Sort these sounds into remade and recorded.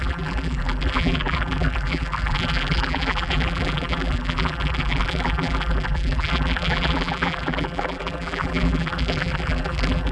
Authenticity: remade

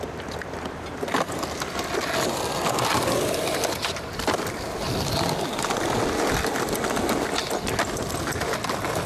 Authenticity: recorded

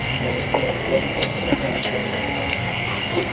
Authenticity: remade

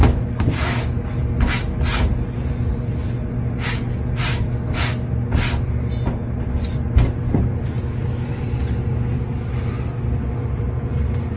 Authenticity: recorded